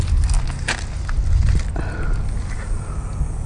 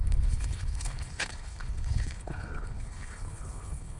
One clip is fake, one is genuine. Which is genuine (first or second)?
first